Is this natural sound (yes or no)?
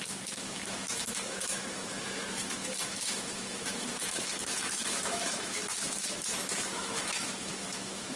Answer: no